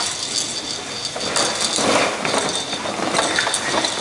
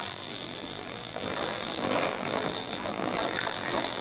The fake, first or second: second